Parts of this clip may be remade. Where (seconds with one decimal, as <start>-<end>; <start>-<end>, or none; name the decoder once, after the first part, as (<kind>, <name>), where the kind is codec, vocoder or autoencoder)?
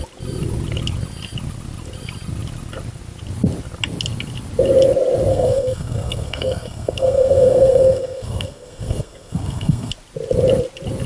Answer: 5.3-9.9 (codec, SNAC)